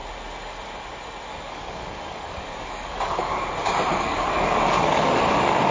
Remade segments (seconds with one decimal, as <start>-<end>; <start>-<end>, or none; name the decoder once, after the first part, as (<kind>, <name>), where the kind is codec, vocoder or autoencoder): 1.3-3.4 (codec, DAC); 3.9-5.7